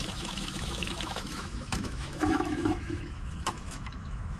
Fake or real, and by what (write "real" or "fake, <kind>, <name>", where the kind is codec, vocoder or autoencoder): fake, autoencoder, DAC-VAE